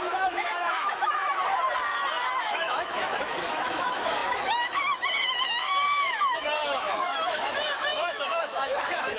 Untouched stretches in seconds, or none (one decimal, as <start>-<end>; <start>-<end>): 1.4-2.4